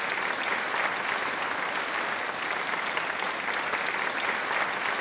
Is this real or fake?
real